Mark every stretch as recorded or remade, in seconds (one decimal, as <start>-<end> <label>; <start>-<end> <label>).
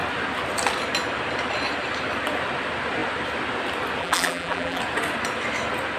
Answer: 0.0-4.0 recorded; 4.0-4.8 remade; 4.8-6.0 recorded